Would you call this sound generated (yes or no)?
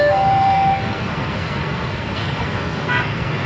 yes